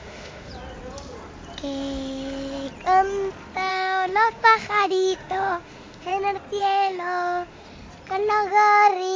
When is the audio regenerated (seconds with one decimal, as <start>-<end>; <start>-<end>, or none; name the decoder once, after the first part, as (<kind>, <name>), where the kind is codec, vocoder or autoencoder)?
0.0-0.5 (autoencoder, DAC-VAE); 3.7-6.1; 6.6-7.6; 8.5-9.2